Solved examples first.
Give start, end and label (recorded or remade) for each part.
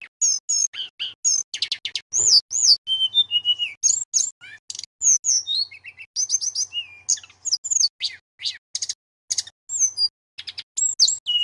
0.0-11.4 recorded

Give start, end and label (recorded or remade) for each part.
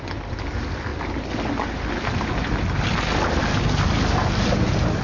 0.0-5.0 recorded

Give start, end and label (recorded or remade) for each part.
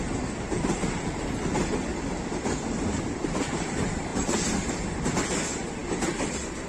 0.0-6.7 recorded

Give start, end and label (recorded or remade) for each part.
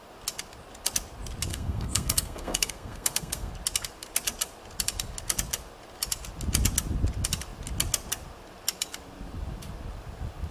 0.0-1.5 recorded; 1.5-3.5 remade; 3.5-10.5 recorded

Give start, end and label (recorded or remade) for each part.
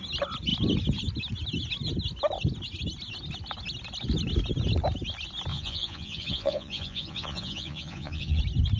0.0-5.5 recorded; 5.5-8.4 remade; 8.4-8.8 recorded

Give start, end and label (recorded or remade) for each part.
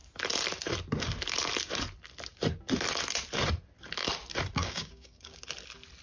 0.0-4.6 recorded; 4.6-5.4 remade; 5.4-6.0 recorded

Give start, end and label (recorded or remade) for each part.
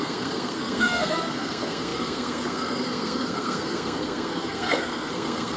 0.0-5.6 remade